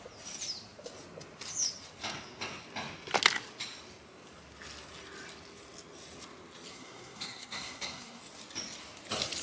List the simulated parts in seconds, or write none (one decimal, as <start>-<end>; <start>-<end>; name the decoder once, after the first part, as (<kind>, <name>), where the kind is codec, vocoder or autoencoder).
6.7-8.2 (codec, SNAC)